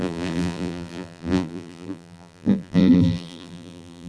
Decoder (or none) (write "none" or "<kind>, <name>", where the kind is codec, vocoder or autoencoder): vocoder, BigVGAN v2